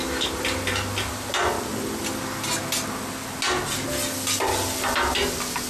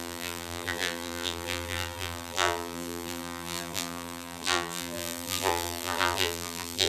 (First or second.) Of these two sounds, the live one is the first